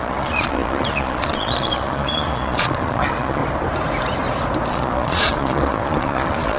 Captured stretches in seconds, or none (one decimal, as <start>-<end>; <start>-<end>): 3.4-4.7